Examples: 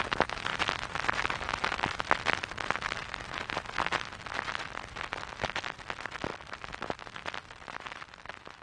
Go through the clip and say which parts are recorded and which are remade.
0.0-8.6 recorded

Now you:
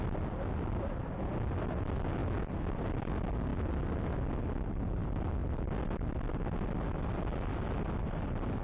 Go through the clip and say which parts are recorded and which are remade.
0.0-8.6 recorded